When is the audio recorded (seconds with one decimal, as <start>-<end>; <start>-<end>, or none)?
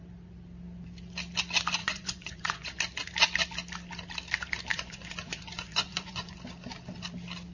0.0-1.8; 2.8-4.7; 6.4-7.5